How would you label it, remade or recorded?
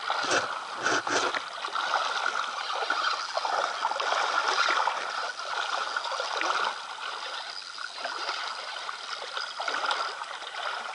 recorded